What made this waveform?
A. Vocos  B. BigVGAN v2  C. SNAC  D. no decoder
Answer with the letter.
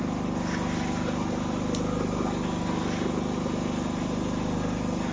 D